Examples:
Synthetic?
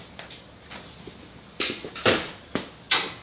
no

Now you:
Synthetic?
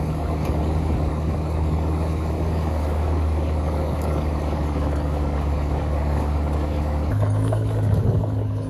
yes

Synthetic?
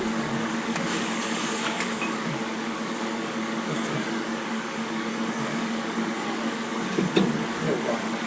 yes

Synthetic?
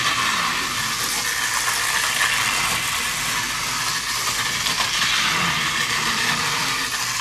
no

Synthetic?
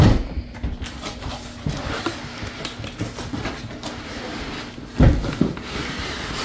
no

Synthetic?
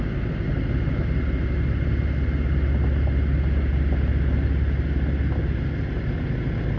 no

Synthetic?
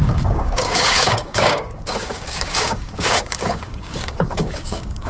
yes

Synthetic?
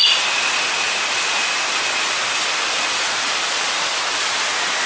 no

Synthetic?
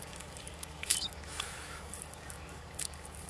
yes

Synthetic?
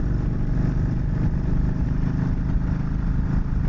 no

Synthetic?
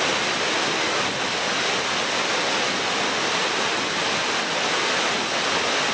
no